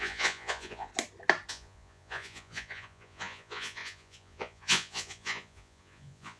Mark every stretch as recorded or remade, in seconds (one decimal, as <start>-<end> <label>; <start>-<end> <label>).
0.0-0.9 remade; 0.9-1.5 recorded; 1.5-6.4 remade